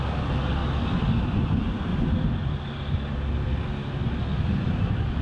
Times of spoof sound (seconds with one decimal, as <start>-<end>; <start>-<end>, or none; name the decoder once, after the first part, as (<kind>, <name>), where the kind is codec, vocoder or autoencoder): 0.0-0.6 (vocoder, BigVGAN v2); 1.4-1.9